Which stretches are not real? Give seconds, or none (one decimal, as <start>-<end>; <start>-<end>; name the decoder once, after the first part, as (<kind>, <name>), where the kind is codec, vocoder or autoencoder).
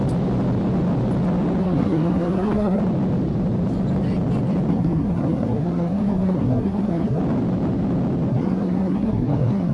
1.6-2.8 (codec, SNAC); 4.7-7.2; 8.3-9.7